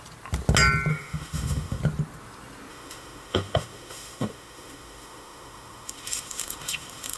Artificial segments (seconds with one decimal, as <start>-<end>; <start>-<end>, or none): 0.9-1.8; 2.7-7.2